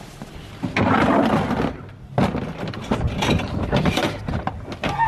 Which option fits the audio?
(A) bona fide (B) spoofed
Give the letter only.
A